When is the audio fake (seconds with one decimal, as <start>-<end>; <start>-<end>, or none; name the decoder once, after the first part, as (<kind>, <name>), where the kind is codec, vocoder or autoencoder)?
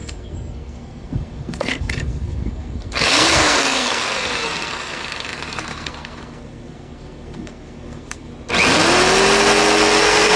0.0-8.3 (codec, SNAC); 10.0-10.4